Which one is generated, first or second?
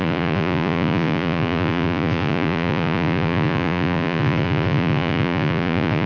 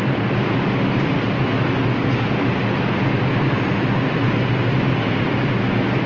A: first